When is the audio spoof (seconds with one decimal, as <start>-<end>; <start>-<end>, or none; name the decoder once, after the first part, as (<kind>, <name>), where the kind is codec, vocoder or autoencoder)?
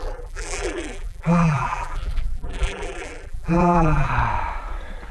0.0-4.1 (vocoder, BigVGAN v2)